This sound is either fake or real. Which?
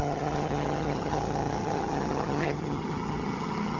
fake